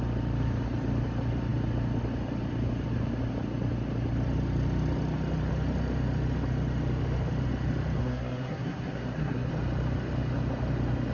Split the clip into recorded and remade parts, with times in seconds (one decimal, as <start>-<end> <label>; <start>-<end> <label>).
0.0-8.0 recorded; 8.0-9.5 remade; 9.5-11.1 recorded